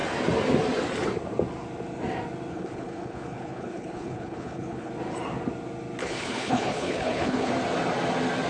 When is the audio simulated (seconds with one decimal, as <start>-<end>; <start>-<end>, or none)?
2.5-4.9; 6.0-7.5